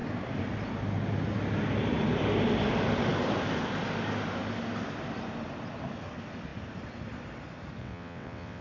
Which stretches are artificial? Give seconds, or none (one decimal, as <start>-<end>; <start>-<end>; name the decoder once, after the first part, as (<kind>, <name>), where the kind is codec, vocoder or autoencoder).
7.8-8.6 (vocoder, WaveNeXt)